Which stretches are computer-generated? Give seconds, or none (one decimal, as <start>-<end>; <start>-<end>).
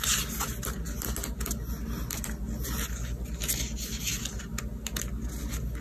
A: none